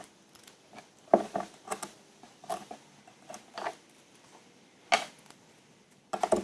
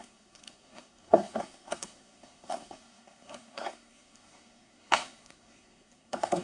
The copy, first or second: second